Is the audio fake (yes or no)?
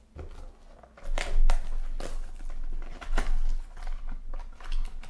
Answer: no